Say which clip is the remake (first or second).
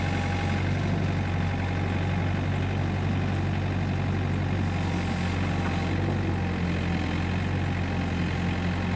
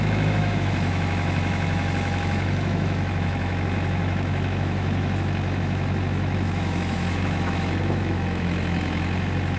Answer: second